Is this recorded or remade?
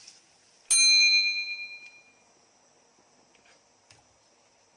recorded